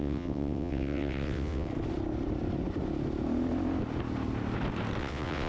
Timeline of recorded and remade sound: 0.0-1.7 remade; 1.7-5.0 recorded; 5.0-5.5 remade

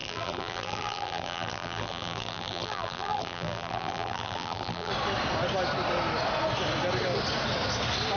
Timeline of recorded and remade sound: 0.0-4.9 remade; 4.9-8.2 recorded

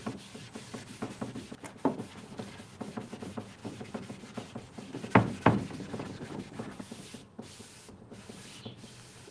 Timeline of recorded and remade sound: 0.0-3.6 recorded; 3.6-4.2 remade; 4.2-9.3 recorded